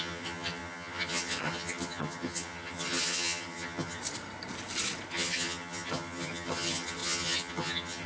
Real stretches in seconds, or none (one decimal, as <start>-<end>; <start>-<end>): 4.0-5.1